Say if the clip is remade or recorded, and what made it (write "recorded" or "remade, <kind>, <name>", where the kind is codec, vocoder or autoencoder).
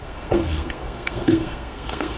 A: remade, codec, SNAC